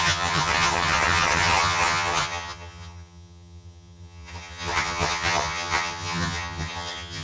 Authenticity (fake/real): fake